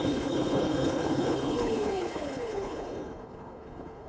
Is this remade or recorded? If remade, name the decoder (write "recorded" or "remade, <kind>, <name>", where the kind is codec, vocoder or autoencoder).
remade, codec, HILCodec